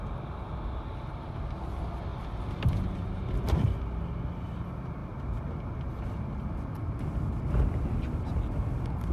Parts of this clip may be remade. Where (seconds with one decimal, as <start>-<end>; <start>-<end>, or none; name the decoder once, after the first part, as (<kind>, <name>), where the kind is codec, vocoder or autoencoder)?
2.1-3.6 (vocoder, BigVGAN v2)